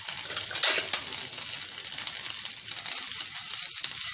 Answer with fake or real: real